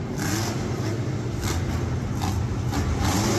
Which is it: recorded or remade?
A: recorded